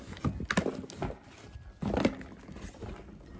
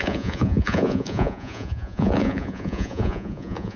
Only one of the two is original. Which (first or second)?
first